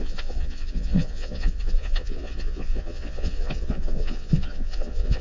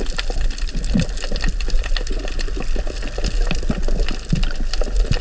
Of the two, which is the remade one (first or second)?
first